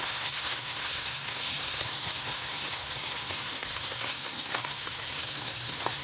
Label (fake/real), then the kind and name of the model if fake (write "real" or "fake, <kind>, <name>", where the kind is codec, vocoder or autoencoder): fake, codec, SNAC